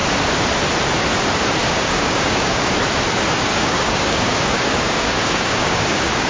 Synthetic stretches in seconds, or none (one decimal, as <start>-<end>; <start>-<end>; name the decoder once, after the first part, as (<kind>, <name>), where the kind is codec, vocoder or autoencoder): 1.6-2.8 (codec, DAC); 3.5-6.3